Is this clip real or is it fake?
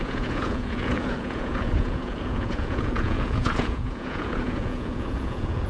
fake